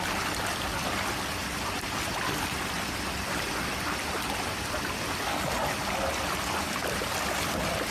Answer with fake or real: real